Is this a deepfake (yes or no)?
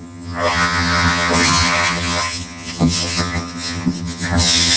yes